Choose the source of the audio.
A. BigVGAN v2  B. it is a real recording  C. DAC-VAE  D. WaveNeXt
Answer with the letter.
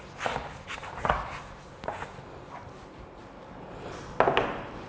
B